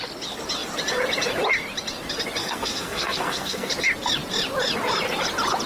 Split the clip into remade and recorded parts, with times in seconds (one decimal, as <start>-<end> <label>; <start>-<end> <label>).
0.0-2.4 recorded; 2.4-3.7 remade; 3.7-5.7 recorded